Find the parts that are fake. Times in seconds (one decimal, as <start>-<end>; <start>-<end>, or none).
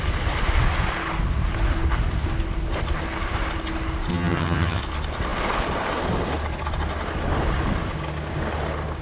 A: 4.1-4.8